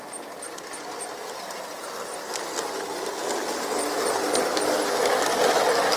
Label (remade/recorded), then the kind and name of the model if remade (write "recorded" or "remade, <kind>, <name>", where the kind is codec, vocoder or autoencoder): recorded